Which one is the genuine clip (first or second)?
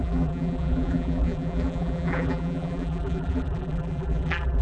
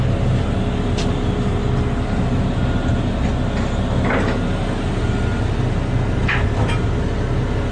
second